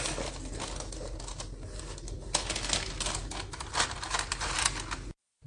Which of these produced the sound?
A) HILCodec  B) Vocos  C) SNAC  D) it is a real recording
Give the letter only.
D